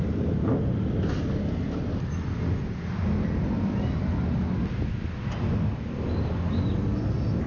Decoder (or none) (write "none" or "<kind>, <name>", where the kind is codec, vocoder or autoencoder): none